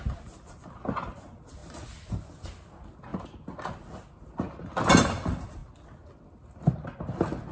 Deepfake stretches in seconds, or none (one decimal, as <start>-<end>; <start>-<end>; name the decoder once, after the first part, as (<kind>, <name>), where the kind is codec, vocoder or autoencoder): none